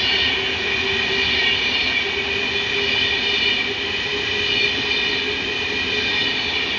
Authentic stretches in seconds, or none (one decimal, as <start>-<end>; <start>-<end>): 0.0-6.8